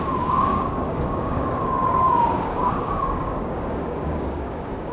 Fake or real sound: fake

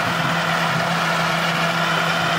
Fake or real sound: real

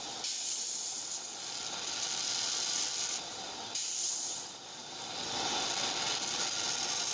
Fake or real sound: real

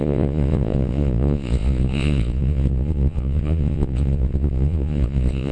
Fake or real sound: fake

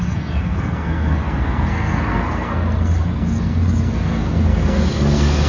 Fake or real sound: fake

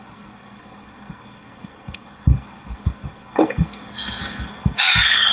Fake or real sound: fake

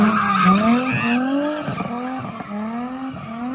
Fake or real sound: real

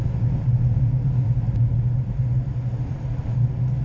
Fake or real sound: real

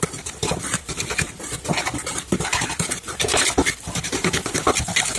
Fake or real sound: fake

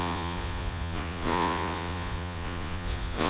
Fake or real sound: fake